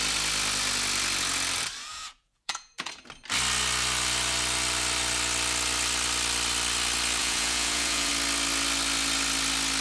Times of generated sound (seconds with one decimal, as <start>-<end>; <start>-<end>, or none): 1.9-2.9; 7.2-8.1